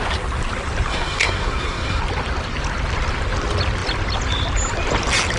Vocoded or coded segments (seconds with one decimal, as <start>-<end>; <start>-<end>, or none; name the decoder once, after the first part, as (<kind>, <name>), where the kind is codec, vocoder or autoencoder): 0.9-2.0 (codec, SNAC)